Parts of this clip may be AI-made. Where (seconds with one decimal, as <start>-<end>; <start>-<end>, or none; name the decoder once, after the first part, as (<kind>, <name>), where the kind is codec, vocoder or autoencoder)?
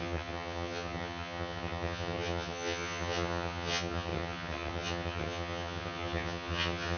0.0-7.0 (vocoder, HiFi-GAN)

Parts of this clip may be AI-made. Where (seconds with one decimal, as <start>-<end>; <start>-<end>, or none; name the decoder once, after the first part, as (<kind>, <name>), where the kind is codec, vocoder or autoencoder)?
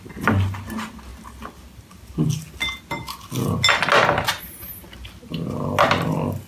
none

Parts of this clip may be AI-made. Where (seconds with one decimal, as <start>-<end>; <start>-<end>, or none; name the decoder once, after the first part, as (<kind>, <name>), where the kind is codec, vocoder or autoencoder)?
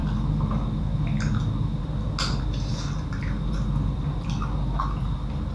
none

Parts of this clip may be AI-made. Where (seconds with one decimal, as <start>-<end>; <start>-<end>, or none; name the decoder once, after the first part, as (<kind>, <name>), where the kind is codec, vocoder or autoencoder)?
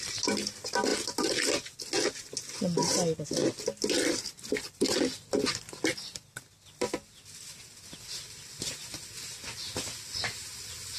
none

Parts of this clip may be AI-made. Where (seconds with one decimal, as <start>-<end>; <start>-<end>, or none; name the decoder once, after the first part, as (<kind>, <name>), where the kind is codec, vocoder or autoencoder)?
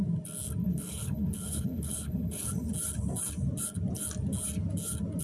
0.6-2.7 (codec, HILCodec)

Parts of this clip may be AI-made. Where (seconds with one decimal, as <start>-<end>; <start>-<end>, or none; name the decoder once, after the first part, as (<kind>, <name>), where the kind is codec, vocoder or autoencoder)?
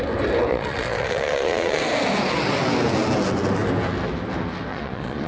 0.5-1.8 (vocoder, Vocos); 4.7-5.3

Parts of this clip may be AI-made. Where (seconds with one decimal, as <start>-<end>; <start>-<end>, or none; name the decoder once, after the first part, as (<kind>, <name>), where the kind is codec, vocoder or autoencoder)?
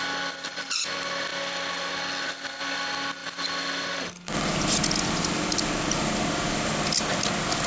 none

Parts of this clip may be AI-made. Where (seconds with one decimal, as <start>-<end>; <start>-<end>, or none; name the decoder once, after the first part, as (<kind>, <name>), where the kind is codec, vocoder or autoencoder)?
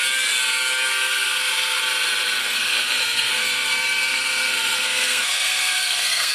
0.9-1.8 (codec, SNAC); 2.4-6.3